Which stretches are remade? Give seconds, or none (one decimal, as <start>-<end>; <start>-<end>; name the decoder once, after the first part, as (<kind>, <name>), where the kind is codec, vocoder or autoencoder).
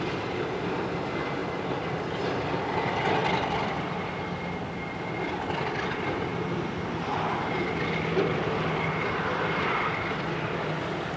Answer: 1.4-2.6 (vocoder, BigVGAN v2); 3.2-5.1